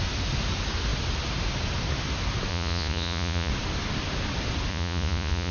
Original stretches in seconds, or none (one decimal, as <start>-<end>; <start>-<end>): 0.0-2.5; 3.5-4.7